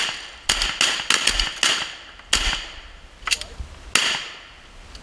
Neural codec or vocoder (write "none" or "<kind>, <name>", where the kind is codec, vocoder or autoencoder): none